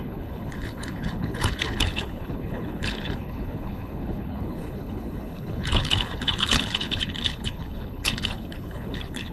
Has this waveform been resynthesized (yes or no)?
yes